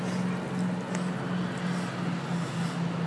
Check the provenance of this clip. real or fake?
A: real